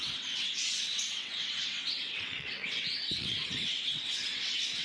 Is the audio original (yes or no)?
no